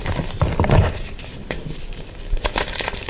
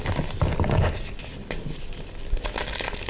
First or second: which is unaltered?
second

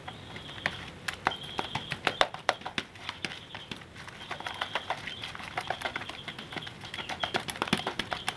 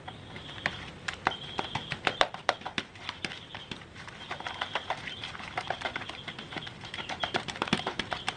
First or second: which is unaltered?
first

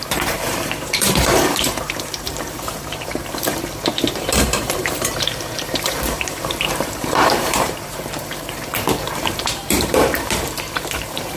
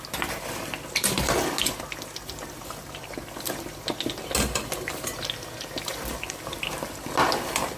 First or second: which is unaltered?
second